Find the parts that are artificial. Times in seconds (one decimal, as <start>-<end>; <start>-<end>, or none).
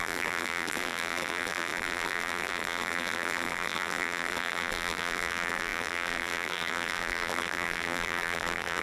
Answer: 0.0-8.8